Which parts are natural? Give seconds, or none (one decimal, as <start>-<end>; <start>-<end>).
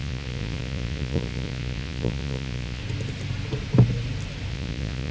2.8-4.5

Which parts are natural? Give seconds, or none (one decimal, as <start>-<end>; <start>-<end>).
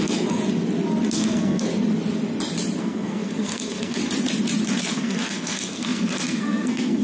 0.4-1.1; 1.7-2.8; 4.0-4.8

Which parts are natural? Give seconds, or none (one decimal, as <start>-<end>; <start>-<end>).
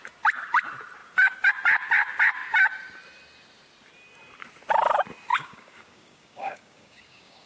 0.0-5.3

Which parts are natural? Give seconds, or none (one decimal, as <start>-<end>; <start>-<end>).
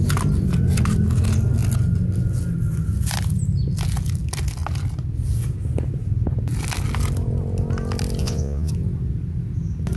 0.0-8.2; 8.7-10.0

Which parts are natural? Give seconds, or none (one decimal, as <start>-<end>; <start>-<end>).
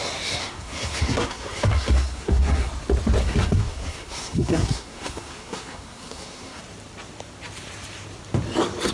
0.0-0.4; 2.7-3.2; 6.6-8.9